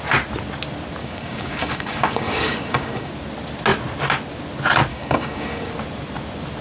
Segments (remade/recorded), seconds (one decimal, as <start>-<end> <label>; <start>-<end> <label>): 0.0-1.0 recorded; 1.0-3.1 remade; 3.1-4.9 recorded; 4.9-5.7 remade; 5.7-6.6 recorded